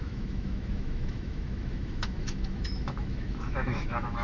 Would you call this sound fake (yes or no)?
yes